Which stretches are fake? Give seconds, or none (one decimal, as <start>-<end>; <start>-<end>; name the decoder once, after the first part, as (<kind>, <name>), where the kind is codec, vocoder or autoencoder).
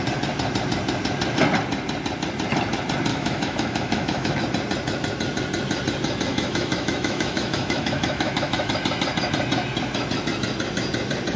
3.1-4.4 (autoencoder, DAC-VAE); 6.3-8.7